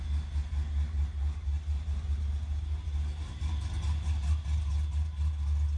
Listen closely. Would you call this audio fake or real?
real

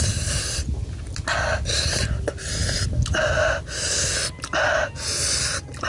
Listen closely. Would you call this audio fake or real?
real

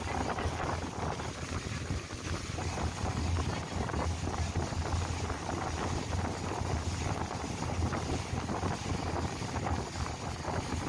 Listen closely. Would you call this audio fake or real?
real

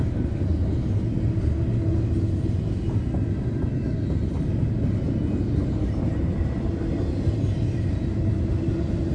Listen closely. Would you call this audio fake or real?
real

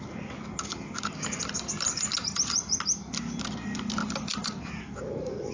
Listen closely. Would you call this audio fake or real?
real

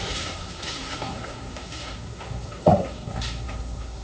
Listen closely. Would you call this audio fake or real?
fake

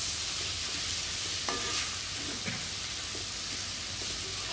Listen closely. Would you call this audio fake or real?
real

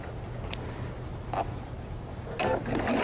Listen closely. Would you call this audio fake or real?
real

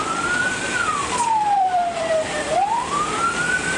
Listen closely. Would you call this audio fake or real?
fake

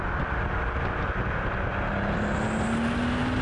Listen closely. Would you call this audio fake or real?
real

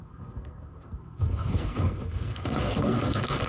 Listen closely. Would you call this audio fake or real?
fake